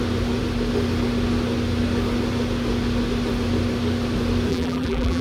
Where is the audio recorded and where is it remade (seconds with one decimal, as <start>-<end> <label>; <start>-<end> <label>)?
0.0-4.5 recorded; 4.5-5.2 remade

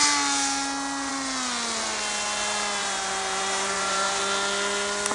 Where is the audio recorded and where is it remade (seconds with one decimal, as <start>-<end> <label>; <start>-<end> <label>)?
0.0-2.8 recorded; 2.8-4.2 remade; 4.2-5.1 recorded

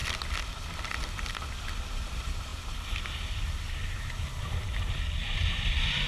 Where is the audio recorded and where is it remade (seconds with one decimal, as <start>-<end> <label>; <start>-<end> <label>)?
0.0-1.7 recorded; 1.7-2.5 remade; 2.5-4.4 recorded; 4.4-5.4 remade; 5.4-6.1 recorded

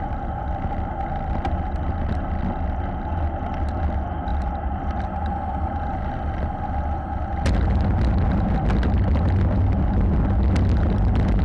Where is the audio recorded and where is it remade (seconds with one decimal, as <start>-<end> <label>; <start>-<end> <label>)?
0.0-4.3 recorded; 4.3-5.3 remade; 5.3-11.4 recorded

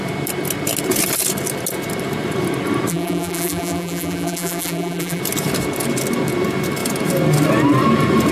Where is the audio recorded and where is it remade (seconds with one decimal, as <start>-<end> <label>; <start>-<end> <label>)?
0.0-2.9 recorded; 2.9-5.2 remade; 5.2-8.3 recorded

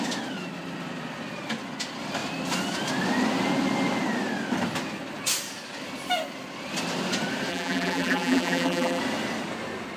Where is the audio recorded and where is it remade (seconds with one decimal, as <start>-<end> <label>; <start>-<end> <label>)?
0.0-7.5 recorded; 7.5-9.0 remade; 9.0-10.0 recorded

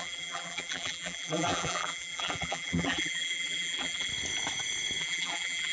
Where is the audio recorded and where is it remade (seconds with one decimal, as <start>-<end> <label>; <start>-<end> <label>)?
0.0-4.1 remade; 4.1-5.0 recorded; 5.0-5.7 remade